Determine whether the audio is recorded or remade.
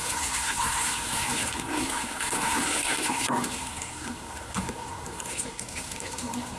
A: remade